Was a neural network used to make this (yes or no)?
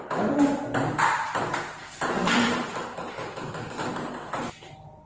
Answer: no